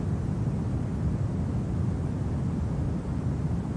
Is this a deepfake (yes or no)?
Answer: no